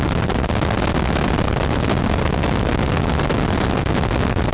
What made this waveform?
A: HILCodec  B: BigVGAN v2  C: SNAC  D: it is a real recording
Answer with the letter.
D